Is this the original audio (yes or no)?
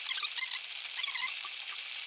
yes